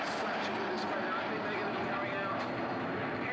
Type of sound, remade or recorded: recorded